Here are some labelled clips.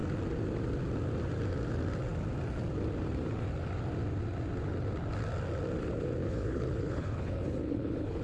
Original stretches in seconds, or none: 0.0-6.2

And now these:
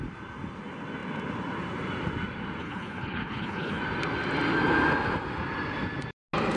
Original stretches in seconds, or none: 0.0-2.6; 3.8-6.6

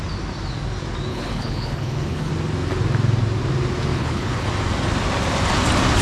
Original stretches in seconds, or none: 0.0-1.1; 2.3-3.9; 4.5-6.0

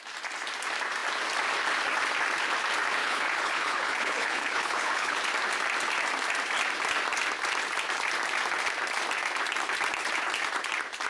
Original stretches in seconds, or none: 0.0-3.0; 5.2-11.1